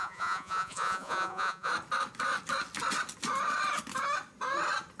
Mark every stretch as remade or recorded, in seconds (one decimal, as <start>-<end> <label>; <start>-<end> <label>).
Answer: 0.0-1.7 remade; 1.7-5.0 recorded